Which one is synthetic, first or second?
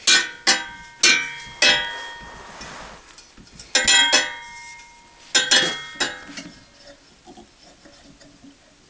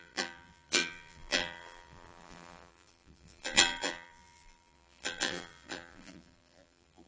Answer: second